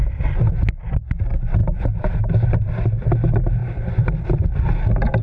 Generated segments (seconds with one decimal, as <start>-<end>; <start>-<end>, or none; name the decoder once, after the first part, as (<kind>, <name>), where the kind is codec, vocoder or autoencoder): 1.6-2.2 (vocoder, BigVGAN v2); 3.6-4.5